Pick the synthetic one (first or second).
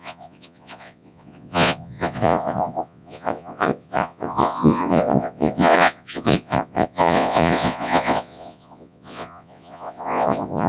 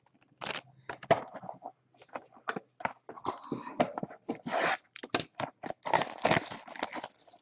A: first